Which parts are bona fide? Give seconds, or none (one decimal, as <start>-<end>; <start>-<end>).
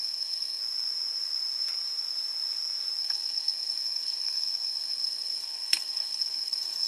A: 0.6-3.0